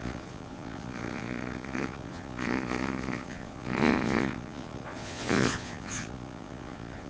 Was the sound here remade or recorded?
remade